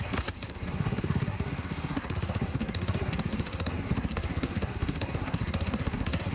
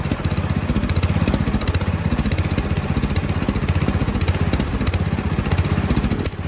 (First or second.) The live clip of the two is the second